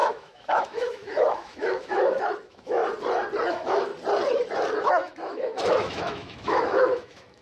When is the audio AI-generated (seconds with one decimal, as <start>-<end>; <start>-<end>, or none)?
0.0-2.8; 3.5-3.9; 4.8-7.4